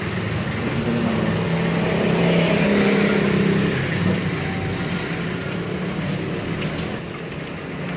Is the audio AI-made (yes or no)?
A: no